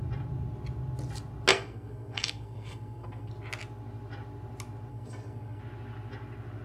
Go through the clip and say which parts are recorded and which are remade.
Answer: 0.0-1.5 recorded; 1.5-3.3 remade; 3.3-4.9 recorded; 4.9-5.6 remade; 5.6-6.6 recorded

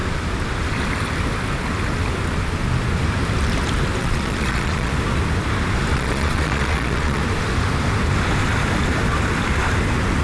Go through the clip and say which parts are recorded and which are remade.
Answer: 0.0-4.0 recorded; 4.0-4.9 remade; 4.9-5.9 recorded; 5.9-7.2 remade; 7.2-10.2 recorded

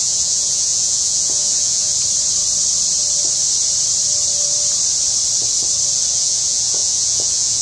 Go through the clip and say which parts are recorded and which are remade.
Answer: 0.0-1.9 remade; 1.9-6.1 recorded; 6.1-7.6 remade

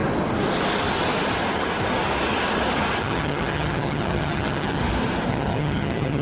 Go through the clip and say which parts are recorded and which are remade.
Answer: 0.0-3.0 recorded; 3.0-4.8 remade; 4.8-5.3 recorded; 5.3-6.2 remade